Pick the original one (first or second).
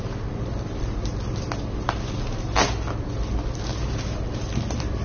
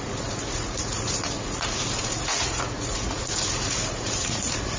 first